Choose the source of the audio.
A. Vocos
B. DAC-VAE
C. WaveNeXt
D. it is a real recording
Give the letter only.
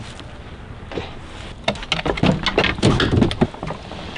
D